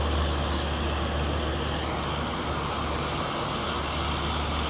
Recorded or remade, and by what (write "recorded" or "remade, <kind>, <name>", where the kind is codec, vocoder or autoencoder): recorded